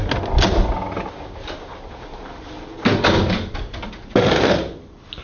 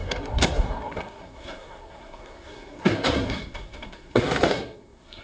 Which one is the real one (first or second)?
first